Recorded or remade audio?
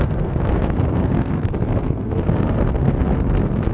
remade